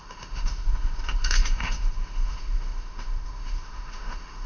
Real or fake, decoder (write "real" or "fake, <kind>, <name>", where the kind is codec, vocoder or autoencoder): fake, autoencoder, DAC-VAE